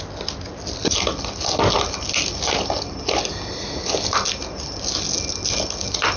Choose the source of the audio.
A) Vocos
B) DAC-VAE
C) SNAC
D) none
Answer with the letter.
D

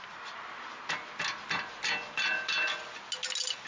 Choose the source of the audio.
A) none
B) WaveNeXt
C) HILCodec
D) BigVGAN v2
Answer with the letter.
A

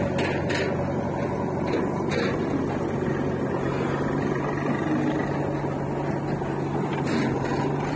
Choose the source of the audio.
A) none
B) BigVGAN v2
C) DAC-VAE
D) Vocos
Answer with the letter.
A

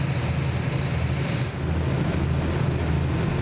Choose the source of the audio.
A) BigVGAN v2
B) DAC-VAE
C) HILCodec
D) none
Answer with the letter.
D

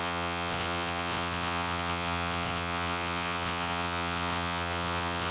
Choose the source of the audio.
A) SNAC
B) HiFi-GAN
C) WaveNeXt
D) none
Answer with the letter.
C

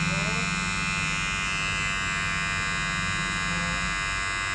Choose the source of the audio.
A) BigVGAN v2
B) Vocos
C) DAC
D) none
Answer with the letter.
D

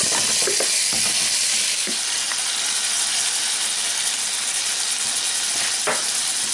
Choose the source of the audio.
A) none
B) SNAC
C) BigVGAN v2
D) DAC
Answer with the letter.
A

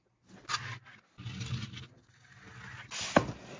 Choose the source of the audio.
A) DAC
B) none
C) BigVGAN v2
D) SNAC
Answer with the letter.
B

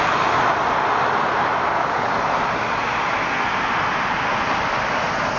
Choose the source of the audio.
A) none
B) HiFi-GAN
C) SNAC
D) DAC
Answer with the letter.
A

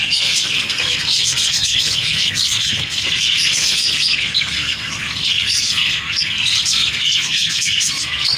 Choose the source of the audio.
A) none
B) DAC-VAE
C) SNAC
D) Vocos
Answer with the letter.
C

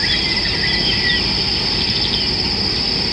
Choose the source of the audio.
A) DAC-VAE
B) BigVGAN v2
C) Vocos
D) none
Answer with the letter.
D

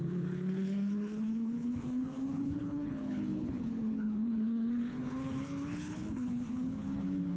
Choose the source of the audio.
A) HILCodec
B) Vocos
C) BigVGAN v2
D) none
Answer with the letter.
A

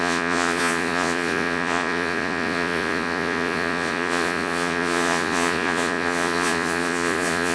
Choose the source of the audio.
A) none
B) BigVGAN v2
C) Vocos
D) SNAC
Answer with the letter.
C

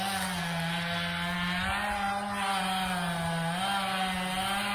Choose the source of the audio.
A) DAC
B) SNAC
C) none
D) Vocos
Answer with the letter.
C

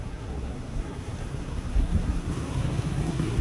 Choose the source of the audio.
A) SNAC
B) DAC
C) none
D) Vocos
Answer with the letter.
A